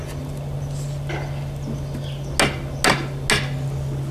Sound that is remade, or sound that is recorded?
recorded